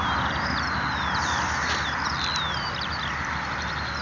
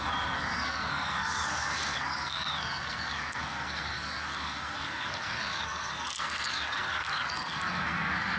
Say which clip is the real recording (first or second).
first